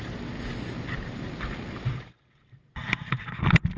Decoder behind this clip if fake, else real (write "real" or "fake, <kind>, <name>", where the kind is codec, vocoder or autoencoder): real